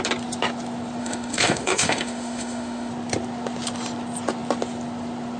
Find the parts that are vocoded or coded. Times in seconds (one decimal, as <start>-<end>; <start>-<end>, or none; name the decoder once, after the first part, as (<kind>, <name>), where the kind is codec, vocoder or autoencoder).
1.0-2.9 (autoencoder, DAC-VAE)